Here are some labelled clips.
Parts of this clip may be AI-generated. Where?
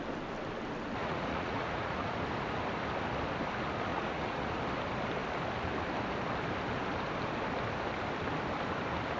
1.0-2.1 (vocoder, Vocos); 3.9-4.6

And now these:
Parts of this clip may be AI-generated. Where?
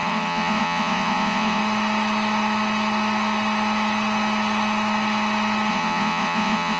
0.0-1.6 (vocoder, Vocos); 5.7-6.8